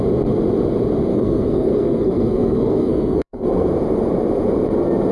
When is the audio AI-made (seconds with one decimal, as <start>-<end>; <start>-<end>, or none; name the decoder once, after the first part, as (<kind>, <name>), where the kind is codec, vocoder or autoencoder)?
1.1-3.7 (codec, SNAC)